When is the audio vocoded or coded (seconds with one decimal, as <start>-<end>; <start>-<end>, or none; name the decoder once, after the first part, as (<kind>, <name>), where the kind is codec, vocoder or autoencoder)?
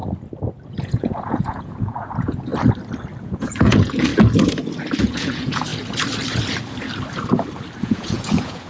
0.7-2.5 (vocoder, Vocos); 3.2-4.1; 5.0-5.7; 7.8-8.7